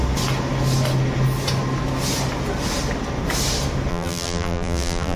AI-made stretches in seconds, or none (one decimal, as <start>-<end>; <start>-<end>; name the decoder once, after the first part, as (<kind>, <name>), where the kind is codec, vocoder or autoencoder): 3.9-5.2 (vocoder, BigVGAN v2)